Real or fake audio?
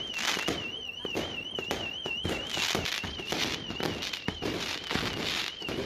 real